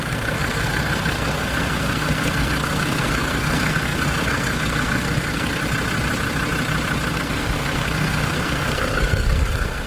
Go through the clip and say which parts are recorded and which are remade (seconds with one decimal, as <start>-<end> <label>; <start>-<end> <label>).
0.0-5.6 remade; 5.6-7.1 recorded; 7.1-9.9 remade